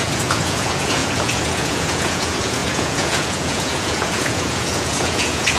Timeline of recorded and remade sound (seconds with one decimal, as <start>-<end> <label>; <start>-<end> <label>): 0.0-5.6 remade